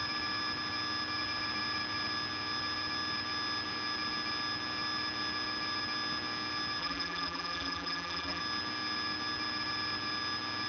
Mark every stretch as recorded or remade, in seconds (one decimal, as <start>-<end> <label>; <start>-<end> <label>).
0.0-6.8 recorded; 6.8-8.4 remade; 8.4-10.7 recorded